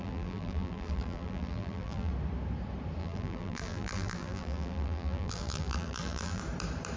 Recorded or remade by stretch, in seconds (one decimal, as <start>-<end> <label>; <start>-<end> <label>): 0.0-2.1 remade; 2.1-3.0 recorded; 3.0-6.4 remade; 6.4-7.0 recorded